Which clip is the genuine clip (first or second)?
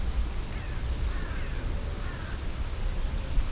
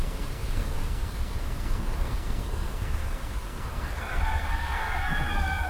first